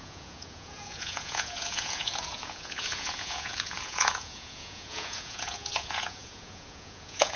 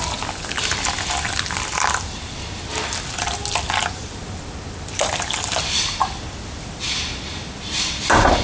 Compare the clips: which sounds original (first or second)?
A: second